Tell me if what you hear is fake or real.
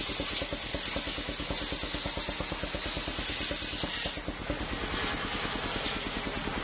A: real